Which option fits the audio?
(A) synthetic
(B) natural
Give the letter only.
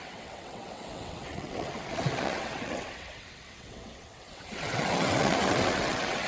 A